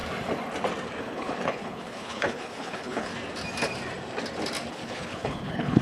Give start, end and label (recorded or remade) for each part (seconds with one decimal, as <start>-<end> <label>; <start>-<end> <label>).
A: 0.0-1.0 recorded; 1.0-3.1 remade; 3.1-4.7 recorded; 4.7-5.8 remade